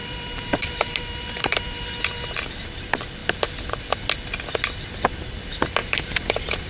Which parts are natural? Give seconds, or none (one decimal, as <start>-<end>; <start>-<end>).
2.2-5.8